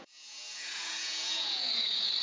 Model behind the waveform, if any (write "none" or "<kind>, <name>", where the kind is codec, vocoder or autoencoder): vocoder, Vocos